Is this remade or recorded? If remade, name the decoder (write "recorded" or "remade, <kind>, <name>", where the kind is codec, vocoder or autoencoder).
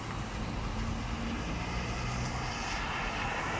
recorded